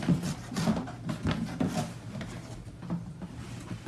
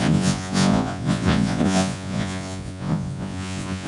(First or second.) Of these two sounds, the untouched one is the first